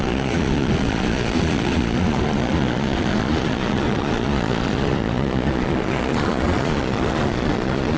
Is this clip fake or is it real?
fake